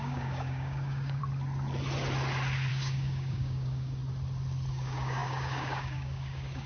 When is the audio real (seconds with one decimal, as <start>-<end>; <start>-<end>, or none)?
1.2-2.7; 4.0-4.7